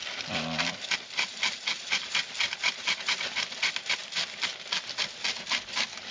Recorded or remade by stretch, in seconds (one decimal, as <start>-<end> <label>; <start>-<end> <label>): 0.0-6.1 remade